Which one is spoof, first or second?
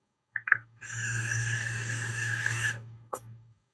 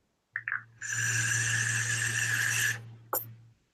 first